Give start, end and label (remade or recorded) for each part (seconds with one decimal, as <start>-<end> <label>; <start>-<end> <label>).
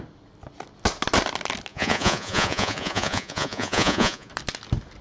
0.0-1.7 recorded; 1.7-4.3 remade; 4.3-5.0 recorded